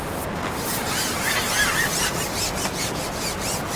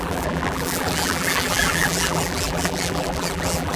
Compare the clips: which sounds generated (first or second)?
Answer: second